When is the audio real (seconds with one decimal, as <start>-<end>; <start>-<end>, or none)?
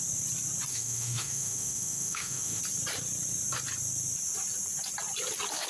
0.0-0.7; 2.6-5.7